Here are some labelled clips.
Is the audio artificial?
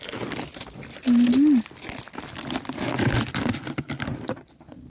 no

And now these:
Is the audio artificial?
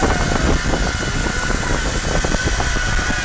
no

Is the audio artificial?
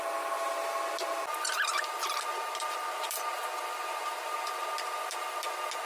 no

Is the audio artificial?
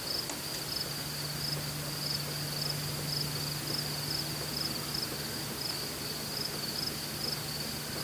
no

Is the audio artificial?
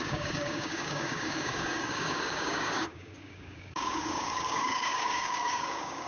yes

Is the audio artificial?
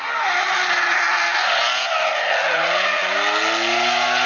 no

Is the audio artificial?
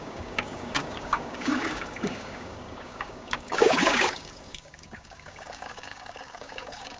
yes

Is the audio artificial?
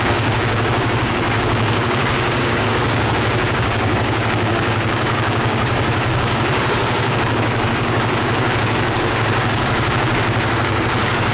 yes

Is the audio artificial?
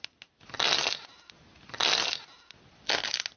no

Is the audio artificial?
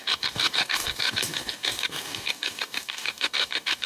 yes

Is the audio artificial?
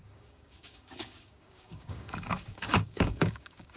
yes